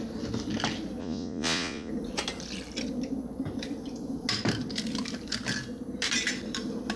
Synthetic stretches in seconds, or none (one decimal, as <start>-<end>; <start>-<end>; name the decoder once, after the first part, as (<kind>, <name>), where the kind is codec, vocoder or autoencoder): 1.0-1.9 (vocoder, Vocos)